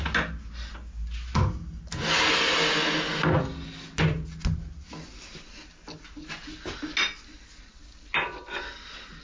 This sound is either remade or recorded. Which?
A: recorded